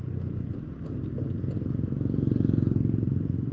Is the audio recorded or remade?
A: recorded